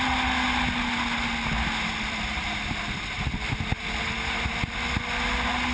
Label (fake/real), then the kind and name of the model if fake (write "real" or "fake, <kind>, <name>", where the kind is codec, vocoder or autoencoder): real